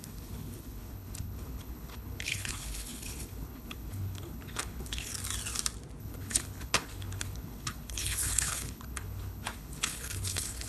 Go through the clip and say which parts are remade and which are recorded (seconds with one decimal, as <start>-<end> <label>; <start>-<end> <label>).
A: 0.0-5.1 remade; 5.1-6.0 recorded; 6.0-10.7 remade